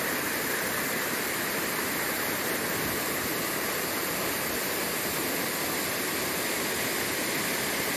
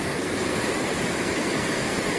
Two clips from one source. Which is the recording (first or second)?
first